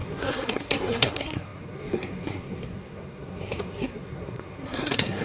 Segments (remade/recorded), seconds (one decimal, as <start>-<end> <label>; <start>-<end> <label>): 0.0-5.2 remade